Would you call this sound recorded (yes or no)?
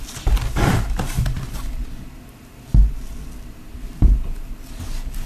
yes